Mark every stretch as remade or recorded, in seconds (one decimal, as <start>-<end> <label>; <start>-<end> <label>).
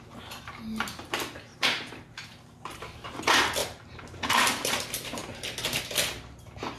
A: 0.0-1.5 recorded; 1.5-3.2 remade; 3.2-3.6 recorded; 3.6-4.3 remade; 4.3-6.8 recorded